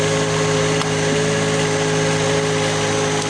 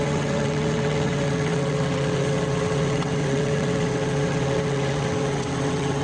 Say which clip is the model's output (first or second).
second